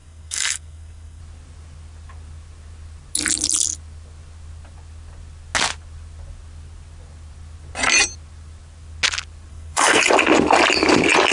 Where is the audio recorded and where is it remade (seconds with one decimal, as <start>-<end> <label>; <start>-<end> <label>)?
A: 0.0-1.2 remade; 1.2-9.5 recorded; 9.5-10.0 remade; 10.0-11.3 recorded